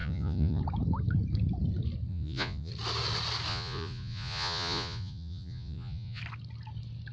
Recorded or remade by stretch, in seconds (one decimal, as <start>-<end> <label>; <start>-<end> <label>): 0.0-0.6 remade; 0.6-2.1 recorded; 2.1-2.7 remade; 2.7-3.5 recorded; 3.5-6.2 remade; 6.2-7.1 recorded